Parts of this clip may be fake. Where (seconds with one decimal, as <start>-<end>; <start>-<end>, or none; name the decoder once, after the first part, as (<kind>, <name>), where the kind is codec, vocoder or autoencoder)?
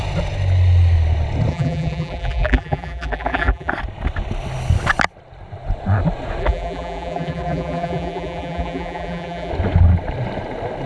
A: 1.5-3.7 (vocoder, BigVGAN v2); 6.4-9.5